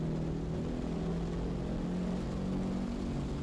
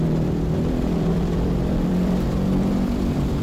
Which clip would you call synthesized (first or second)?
second